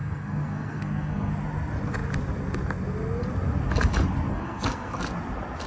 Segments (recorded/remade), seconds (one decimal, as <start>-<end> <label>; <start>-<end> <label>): 0.0-1.3 remade; 1.3-4.3 recorded; 4.3-5.0 remade; 5.0-5.7 recorded